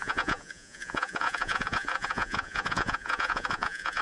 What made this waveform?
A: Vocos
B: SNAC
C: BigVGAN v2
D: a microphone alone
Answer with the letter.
A